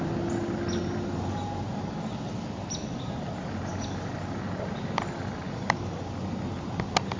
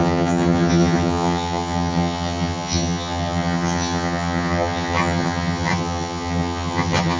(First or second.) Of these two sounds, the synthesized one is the second